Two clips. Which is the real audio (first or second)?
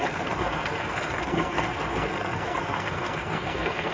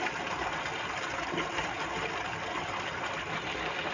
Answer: second